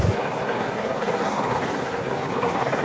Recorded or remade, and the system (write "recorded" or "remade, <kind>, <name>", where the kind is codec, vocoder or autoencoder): remade, codec, SNAC